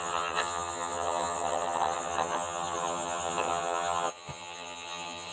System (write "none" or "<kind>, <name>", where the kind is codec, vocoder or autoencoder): vocoder, HiFi-GAN